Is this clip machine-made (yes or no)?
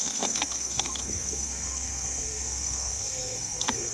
yes